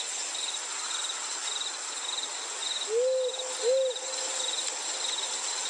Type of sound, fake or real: real